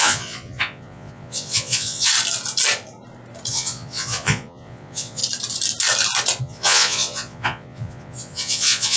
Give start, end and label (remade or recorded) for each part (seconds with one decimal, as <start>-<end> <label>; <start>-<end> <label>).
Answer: 0.0-2.1 remade; 2.1-3.5 recorded; 3.5-5.2 remade; 5.2-6.4 recorded; 6.4-9.0 remade

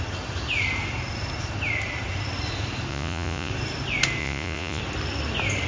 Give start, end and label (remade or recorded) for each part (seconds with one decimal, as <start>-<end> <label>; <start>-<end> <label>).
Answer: 0.0-2.9 recorded; 2.9-3.5 remade; 3.5-4.2 recorded; 4.2-4.8 remade; 4.8-5.7 recorded

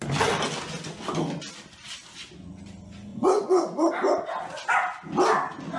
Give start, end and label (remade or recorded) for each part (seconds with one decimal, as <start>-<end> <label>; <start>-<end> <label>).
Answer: 0.0-3.1 recorded; 3.1-3.9 remade; 3.9-5.8 recorded

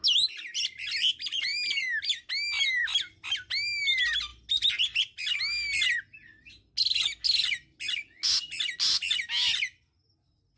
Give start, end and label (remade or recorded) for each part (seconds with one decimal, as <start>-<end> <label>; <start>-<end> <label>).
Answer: 0.0-10.6 recorded

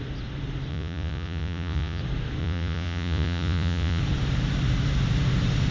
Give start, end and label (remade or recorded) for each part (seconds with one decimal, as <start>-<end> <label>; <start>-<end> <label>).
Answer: 0.0-0.7 recorded; 0.7-2.0 remade; 2.0-2.4 recorded; 2.4-4.0 remade; 4.0-5.7 recorded